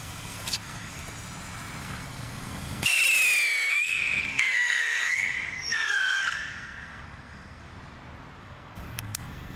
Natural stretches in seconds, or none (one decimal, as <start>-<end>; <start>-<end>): 1.0-1.8; 3.0-3.7; 7.7-8.4